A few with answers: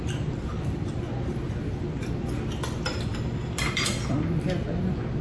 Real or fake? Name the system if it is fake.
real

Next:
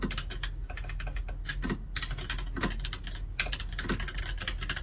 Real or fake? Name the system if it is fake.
real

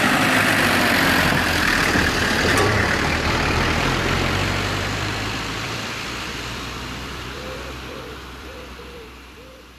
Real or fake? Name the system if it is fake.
fake, vocoder, BigVGAN v2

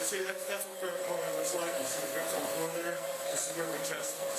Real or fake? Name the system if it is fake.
fake, codec, SNAC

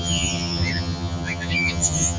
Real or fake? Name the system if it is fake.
fake, vocoder, HiFi-GAN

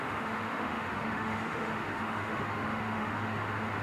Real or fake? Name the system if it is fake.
fake, autoencoder, DAC-VAE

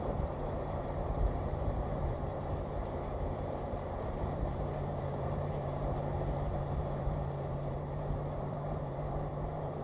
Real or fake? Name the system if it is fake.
fake, vocoder, BigVGAN v2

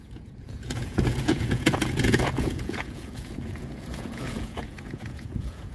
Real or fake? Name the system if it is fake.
fake, vocoder, Vocos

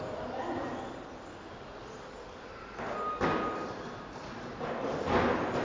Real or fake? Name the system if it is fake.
real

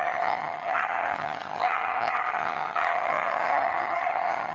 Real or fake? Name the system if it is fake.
fake, vocoder, HiFi-GAN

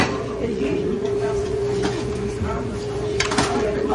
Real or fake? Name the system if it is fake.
fake, vocoder, Vocos